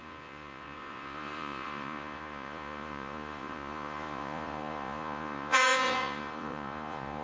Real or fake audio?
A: fake